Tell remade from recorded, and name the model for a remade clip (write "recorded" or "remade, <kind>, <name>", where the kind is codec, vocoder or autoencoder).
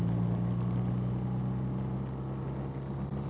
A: recorded